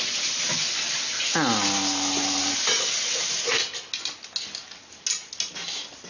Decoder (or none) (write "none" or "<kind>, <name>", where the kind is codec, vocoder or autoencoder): none